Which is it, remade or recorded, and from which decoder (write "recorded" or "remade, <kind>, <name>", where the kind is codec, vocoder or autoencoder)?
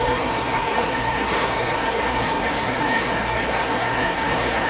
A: remade, codec, SNAC